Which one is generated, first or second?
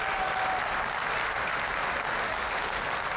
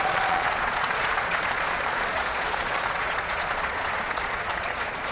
second